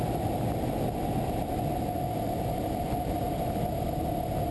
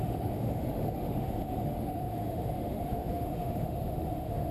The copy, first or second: second